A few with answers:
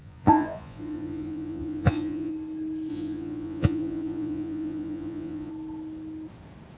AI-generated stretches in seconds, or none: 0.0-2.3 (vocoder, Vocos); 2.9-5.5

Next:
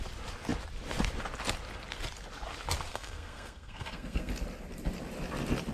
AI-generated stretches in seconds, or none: 2.9-4.3 (codec, SNAC)